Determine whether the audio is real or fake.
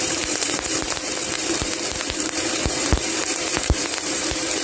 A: fake